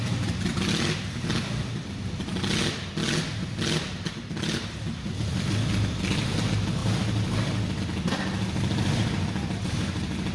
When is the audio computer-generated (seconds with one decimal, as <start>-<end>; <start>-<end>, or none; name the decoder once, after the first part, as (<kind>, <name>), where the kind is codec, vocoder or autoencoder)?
none